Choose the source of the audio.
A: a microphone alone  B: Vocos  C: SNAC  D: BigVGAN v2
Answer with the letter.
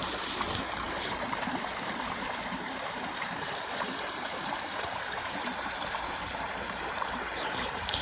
D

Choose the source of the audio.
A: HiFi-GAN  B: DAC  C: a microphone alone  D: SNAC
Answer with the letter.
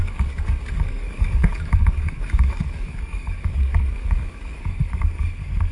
B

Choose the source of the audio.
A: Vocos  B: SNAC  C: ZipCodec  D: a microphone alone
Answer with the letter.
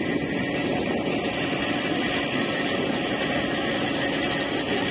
D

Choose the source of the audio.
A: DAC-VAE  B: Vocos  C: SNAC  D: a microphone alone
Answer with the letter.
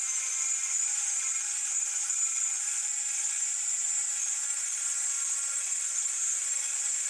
D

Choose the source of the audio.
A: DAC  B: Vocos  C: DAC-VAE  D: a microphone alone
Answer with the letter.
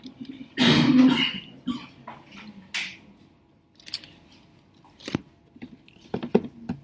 D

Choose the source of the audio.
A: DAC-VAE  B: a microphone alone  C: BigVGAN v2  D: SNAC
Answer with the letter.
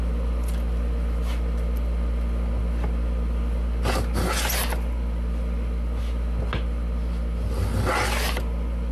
B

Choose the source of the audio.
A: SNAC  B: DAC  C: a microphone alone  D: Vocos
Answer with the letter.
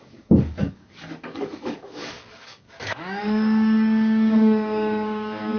B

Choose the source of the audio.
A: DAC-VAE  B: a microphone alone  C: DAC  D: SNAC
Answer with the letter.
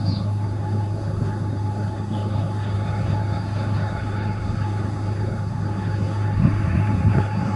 D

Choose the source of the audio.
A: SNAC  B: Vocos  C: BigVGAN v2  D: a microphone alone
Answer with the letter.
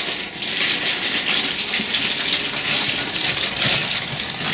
D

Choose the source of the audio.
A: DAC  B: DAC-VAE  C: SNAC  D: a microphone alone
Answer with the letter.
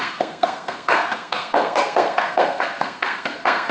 C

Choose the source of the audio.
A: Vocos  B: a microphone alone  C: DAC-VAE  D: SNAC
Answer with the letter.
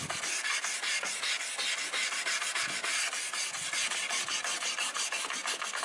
B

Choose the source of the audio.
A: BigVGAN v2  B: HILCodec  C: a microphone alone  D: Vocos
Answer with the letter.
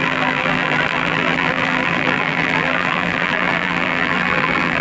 A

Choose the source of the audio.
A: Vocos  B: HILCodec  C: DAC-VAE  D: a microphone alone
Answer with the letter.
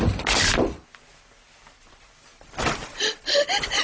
D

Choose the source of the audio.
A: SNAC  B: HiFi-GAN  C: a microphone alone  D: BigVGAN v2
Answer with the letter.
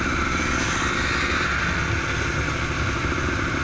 D